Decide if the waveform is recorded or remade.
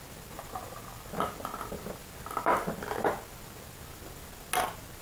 recorded